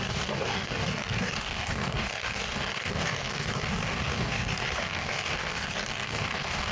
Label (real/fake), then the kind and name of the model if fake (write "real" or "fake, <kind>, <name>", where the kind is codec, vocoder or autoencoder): fake, codec, DAC